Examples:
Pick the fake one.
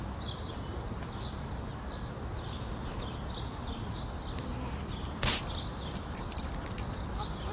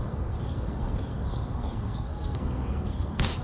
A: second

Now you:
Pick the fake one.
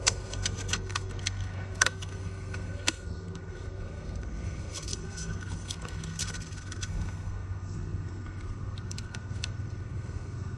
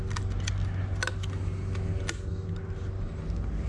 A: first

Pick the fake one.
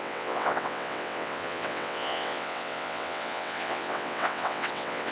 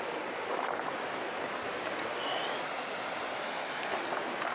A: first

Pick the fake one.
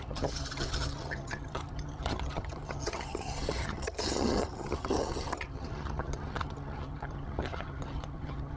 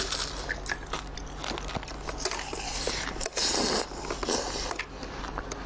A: first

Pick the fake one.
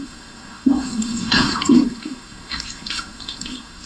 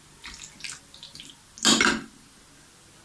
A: first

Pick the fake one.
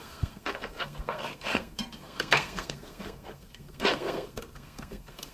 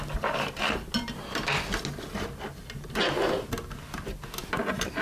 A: first